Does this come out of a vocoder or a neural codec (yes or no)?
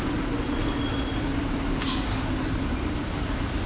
no